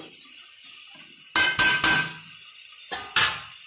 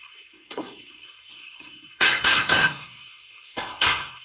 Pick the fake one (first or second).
second